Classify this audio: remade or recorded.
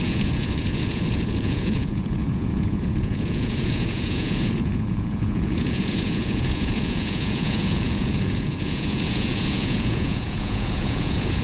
remade